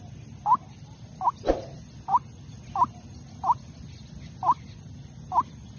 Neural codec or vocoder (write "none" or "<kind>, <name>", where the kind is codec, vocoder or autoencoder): none